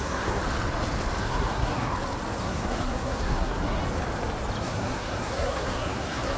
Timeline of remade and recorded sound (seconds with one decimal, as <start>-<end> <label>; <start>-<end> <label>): 0.0-0.4 remade; 0.4-1.2 recorded; 1.2-1.9 remade; 1.9-2.4 recorded; 2.4-3.8 remade; 3.8-4.6 recorded; 4.6-6.4 remade